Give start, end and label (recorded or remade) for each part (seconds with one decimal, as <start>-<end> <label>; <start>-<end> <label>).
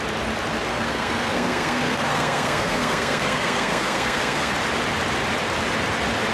0.0-0.7 recorded; 0.7-4.5 remade; 4.5-6.3 recorded